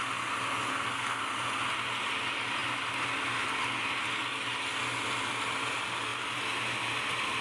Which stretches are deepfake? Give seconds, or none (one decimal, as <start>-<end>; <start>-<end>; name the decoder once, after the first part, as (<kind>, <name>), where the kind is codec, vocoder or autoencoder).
0.7-1.2 (codec, SNAC)